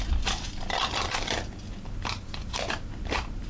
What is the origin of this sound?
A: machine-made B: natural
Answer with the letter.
B